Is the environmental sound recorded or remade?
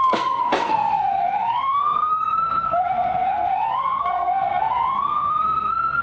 remade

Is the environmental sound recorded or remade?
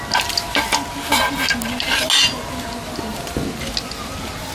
recorded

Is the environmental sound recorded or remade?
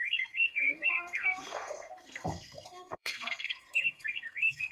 remade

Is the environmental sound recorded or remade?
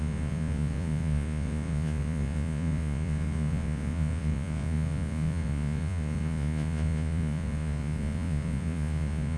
remade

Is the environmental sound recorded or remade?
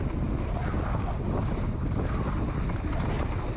recorded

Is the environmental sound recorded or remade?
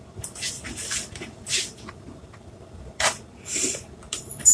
remade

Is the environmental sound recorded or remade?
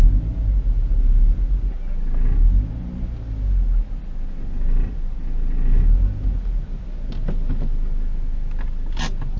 recorded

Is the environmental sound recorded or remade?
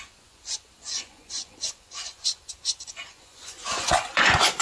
remade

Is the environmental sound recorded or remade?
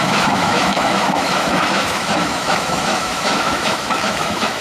remade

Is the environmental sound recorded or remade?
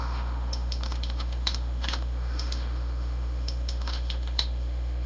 remade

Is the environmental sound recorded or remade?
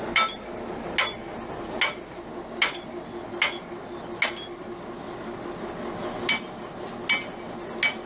recorded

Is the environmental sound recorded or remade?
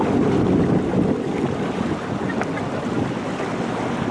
recorded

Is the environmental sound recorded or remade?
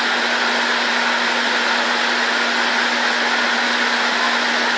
recorded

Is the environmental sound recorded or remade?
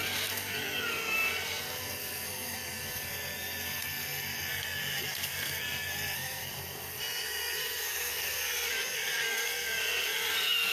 remade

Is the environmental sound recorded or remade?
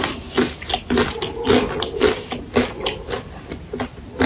recorded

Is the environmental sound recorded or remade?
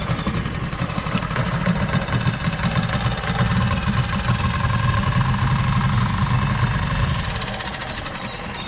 recorded